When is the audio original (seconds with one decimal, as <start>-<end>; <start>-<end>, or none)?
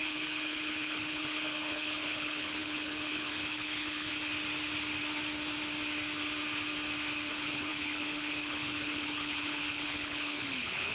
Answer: 4.1-7.3